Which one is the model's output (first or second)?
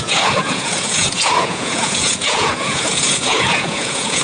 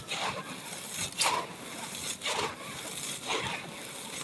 first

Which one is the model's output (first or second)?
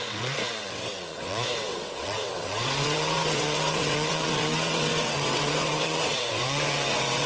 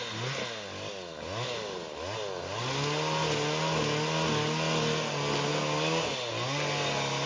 first